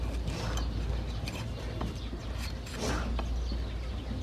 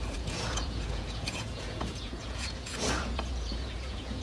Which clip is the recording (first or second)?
first